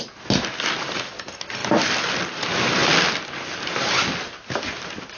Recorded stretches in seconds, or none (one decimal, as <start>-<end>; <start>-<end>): 0.0-5.2